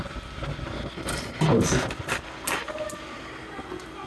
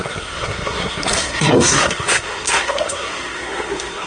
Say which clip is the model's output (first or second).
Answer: second